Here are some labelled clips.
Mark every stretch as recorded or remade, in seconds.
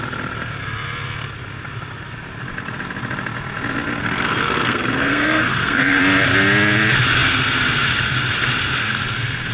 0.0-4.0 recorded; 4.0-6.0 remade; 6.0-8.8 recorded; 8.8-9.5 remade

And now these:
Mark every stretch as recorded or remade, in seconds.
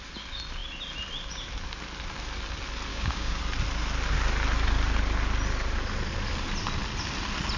0.0-2.9 recorded; 2.9-3.4 remade; 3.4-7.6 recorded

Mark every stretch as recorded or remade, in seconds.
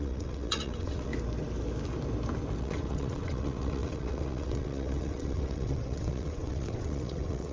0.0-1.1 remade; 1.1-2.6 recorded; 2.6-7.5 remade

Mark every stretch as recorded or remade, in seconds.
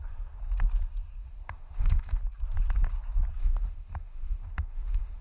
0.0-1.2 recorded; 1.2-2.2 remade; 2.2-3.4 recorded; 3.4-5.2 remade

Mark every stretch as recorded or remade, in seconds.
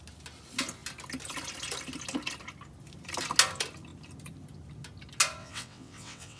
0.0-5.4 recorded; 5.4-6.4 remade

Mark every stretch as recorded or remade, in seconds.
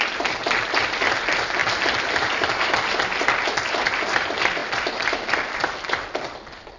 0.0-4.6 recorded; 4.6-5.3 remade; 5.3-6.8 recorded